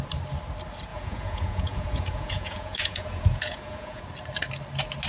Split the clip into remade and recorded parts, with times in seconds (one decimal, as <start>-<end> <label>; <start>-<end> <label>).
0.0-0.9 recorded; 0.9-4.0 remade; 4.0-5.1 recorded